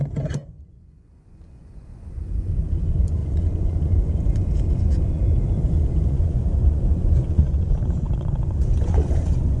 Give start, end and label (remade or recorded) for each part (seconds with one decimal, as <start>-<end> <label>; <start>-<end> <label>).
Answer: 0.0-5.2 remade; 5.2-6.1 recorded; 6.1-9.6 remade